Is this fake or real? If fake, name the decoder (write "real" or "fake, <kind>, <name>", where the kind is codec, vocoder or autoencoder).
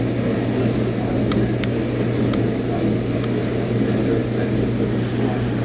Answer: real